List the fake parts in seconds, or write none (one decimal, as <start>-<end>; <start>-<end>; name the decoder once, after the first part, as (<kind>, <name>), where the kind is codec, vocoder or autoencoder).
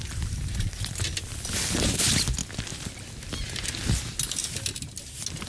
none